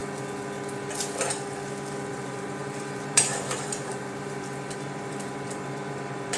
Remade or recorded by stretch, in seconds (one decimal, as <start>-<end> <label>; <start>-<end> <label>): 0.0-2.1 recorded; 2.1-6.4 remade